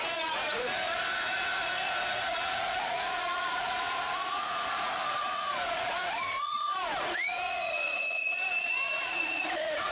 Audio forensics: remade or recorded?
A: remade